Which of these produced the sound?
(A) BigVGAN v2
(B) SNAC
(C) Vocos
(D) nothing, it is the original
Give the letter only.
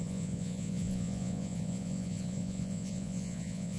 C